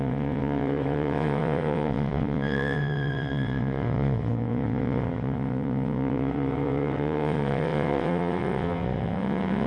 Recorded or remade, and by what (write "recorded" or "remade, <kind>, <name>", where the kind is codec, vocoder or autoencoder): remade, vocoder, WaveNeXt